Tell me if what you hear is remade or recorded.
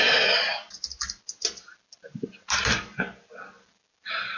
recorded